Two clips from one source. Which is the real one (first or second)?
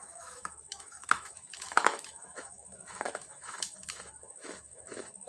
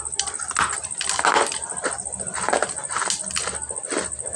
second